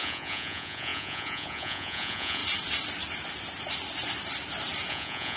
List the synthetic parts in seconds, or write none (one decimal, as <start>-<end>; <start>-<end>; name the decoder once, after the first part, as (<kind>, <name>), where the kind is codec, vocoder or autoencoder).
0.0-2.4 (vocoder, Vocos); 4.9-5.4